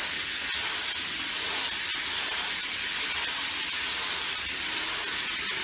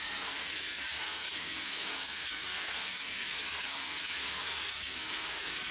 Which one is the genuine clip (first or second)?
first